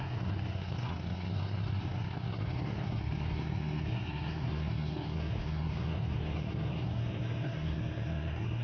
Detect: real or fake fake